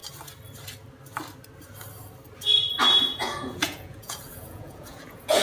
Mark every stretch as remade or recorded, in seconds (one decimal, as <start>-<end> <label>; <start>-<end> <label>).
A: 0.0-3.0 recorded; 3.0-5.4 remade